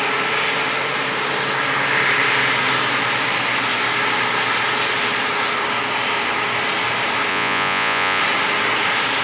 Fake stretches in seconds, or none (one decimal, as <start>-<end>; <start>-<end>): 7.3-8.2